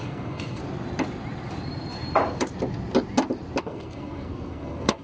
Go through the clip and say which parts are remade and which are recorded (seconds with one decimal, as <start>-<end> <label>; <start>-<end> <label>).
0.0-0.6 remade; 0.6-3.6 recorded; 3.6-5.0 remade